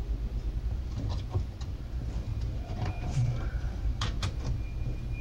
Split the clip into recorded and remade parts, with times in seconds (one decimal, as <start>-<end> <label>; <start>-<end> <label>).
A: 0.0-2.3 recorded; 2.3-4.4 remade; 4.4-5.2 recorded

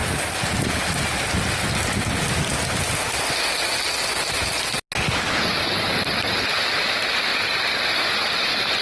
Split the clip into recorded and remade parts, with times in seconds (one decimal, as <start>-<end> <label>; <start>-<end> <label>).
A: 0.0-1.8 remade; 1.8-8.8 recorded

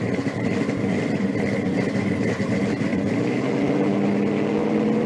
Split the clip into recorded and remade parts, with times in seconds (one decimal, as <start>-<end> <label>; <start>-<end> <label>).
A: 0.0-2.9 recorded; 2.9-3.6 remade; 3.6-5.1 recorded

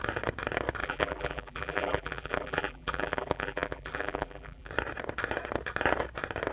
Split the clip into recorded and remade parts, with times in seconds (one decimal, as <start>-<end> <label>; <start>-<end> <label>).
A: 0.0-0.8 recorded; 0.8-4.7 remade; 4.7-6.5 recorded

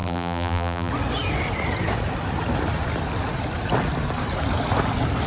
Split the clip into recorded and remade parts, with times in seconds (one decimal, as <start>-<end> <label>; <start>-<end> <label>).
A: 0.0-0.9 remade; 0.9-5.3 recorded